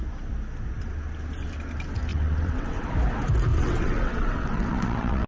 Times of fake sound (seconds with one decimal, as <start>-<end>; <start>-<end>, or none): 2.1-2.9; 3.5-5.3